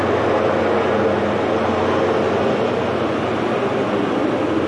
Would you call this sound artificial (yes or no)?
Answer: no